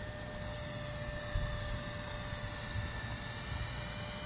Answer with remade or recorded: recorded